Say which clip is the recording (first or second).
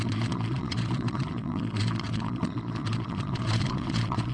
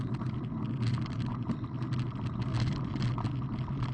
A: second